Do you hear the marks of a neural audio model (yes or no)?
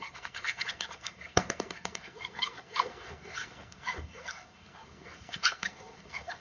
yes